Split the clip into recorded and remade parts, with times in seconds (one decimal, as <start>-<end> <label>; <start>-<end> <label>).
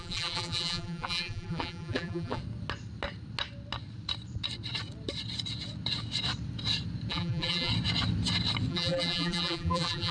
0.0-2.4 remade; 2.4-7.1 recorded; 7.1-7.7 remade; 7.7-8.7 recorded; 8.7-10.1 remade